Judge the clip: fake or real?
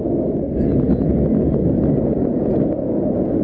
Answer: real